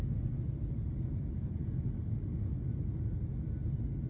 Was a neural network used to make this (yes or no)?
no